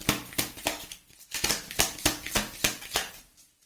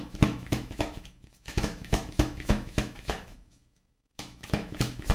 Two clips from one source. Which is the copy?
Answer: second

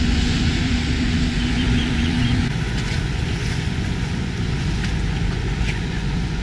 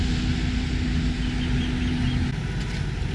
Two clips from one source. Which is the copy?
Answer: first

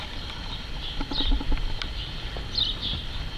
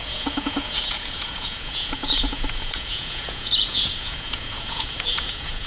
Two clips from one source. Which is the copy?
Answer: second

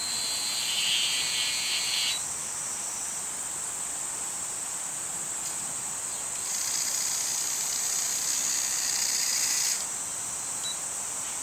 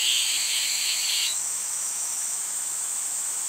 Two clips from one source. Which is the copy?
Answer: second